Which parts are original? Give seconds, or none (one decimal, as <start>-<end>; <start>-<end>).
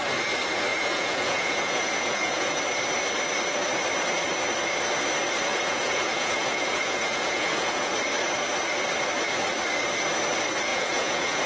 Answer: 0.0-0.7; 2.6-5.5; 7.9-10.7